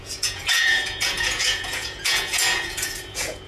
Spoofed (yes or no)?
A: yes